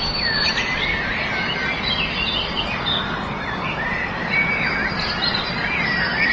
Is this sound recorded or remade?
recorded